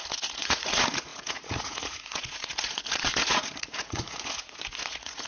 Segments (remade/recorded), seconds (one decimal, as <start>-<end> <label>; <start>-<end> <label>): 0.0-5.3 remade